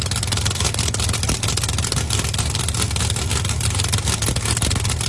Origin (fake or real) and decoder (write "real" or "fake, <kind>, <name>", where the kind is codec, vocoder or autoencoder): real